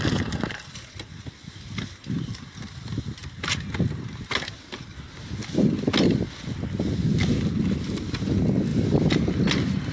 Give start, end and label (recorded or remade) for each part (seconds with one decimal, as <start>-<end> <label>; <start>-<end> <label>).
0.0-9.9 recorded